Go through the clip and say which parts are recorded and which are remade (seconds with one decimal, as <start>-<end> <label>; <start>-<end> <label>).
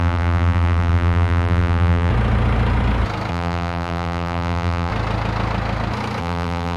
0.0-2.1 remade; 2.1-3.3 recorded; 3.3-4.9 remade; 4.9-6.2 recorded; 6.2-6.8 remade